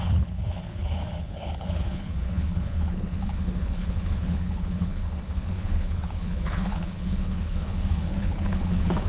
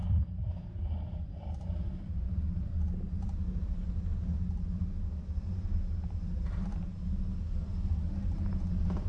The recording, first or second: second